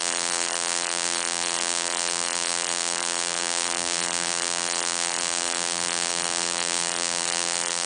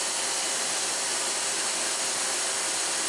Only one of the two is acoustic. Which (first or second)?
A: second